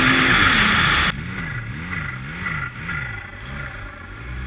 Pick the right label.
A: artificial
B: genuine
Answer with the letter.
B